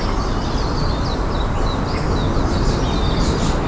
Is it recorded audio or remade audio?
recorded